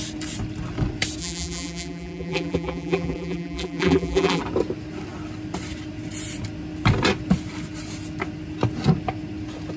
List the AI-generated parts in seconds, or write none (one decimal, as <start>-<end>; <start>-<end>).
1.2-4.4